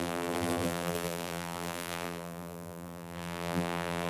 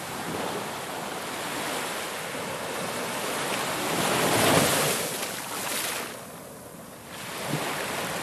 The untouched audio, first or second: second